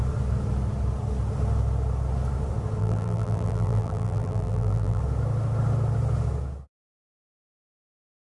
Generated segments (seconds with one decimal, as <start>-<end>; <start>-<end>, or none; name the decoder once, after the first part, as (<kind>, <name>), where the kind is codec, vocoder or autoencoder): 2.8-5.0 (vocoder, BigVGAN v2)